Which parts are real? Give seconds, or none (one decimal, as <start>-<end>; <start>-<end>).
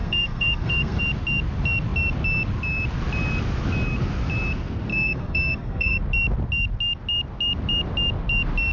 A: 1.0-4.9; 6.0-8.7